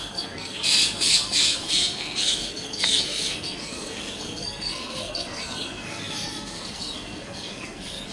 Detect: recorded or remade remade